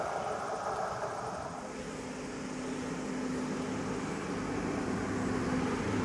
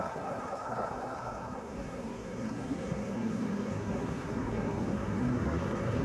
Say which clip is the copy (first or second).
second